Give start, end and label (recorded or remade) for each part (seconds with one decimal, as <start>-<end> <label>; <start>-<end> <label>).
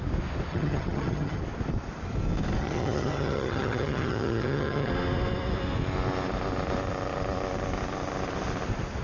0.0-0.5 recorded; 0.5-1.4 remade; 1.4-2.6 recorded; 2.6-4.9 remade; 4.9-9.0 recorded